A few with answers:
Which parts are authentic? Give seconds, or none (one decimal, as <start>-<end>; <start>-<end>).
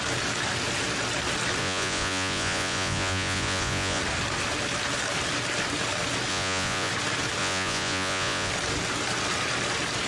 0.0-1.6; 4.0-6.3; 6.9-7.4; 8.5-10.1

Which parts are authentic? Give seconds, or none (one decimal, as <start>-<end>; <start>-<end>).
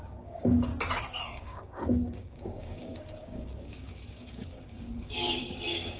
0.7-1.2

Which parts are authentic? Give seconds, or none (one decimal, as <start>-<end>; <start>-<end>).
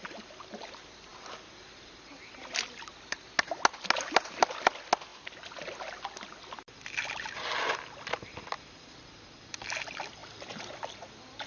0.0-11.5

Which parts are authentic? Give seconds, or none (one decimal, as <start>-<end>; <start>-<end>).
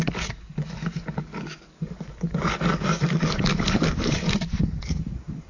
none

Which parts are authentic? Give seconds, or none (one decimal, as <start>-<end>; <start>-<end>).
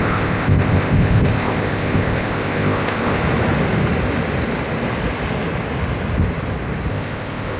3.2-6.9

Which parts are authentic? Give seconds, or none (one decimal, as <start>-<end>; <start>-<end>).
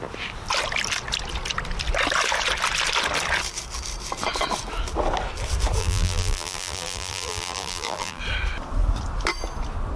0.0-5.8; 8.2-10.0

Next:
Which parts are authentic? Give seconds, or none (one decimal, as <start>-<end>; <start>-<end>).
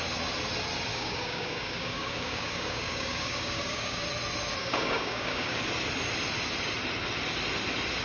0.0-0.9; 4.0-4.6; 5.6-8.0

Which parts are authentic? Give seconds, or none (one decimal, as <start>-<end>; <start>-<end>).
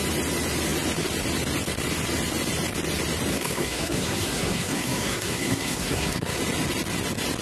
0.0-3.3; 6.4-7.4